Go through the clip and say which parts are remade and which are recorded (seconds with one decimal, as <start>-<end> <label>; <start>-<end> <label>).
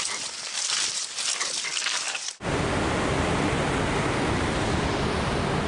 0.0-5.7 recorded